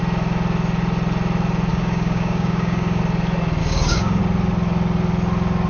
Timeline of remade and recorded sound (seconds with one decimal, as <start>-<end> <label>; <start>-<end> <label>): 0.0-1.7 recorded; 1.7-3.0 remade; 3.0-3.6 recorded; 3.6-4.2 remade; 4.2-5.7 recorded